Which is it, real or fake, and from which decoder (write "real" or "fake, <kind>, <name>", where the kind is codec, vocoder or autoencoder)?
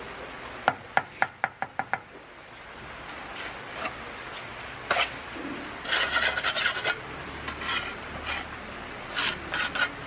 real